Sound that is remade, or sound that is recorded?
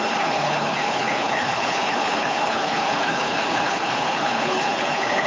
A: remade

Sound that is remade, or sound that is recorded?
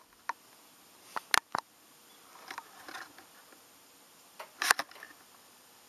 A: recorded